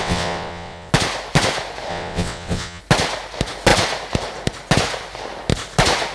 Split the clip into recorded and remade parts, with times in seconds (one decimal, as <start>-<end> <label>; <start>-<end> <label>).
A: 0.0-0.9 remade; 0.9-1.9 recorded; 1.9-2.8 remade; 2.8-6.1 recorded